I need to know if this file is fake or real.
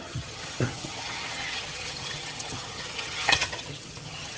fake